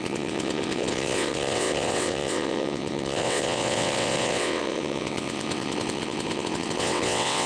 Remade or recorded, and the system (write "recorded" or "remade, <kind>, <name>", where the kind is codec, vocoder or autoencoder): remade, vocoder, WaveNeXt